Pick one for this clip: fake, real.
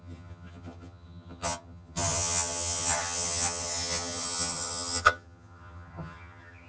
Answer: fake